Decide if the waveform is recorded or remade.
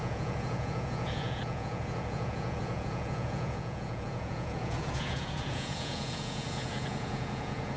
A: remade